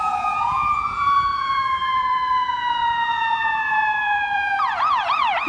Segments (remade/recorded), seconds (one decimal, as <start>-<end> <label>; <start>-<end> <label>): 0.0-5.5 remade